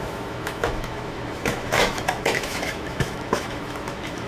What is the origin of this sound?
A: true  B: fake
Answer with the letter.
B